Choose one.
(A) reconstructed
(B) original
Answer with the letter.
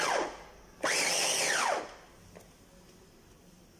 B